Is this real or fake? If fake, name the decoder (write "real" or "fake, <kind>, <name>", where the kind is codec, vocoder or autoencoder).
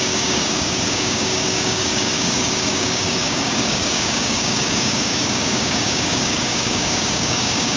fake, codec, DAC